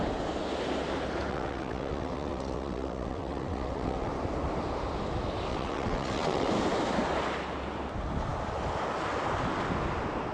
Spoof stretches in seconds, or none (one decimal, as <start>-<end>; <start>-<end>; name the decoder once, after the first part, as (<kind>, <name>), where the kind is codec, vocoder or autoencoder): 1.3-4.1 (vocoder, WaveNeXt); 5.5-6.5